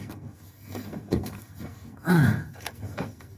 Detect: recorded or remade remade